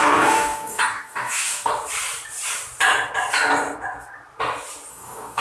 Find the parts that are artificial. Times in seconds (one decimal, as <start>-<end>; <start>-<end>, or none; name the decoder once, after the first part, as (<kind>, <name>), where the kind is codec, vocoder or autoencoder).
0.0-1.7 (codec, DAC); 4.9-5.4